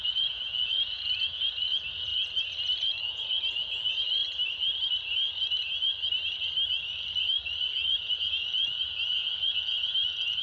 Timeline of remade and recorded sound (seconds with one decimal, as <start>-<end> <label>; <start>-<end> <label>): 0.0-2.1 remade; 2.1-3.0 recorded; 3.0-4.2 remade; 4.2-8.0 recorded; 8.0-10.4 remade